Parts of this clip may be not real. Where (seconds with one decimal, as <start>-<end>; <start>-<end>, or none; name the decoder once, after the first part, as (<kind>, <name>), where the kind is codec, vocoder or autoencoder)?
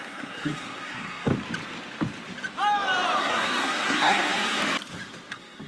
0.0-1.3 (codec, SNAC); 3.2-4.6; 5.3-5.7